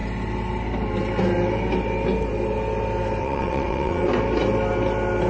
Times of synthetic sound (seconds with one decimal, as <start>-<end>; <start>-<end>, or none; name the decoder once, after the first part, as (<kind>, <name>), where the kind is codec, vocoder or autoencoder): 3.2-4.0 (vocoder, WaveNeXt)